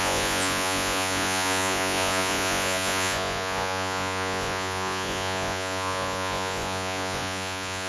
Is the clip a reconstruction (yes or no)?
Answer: yes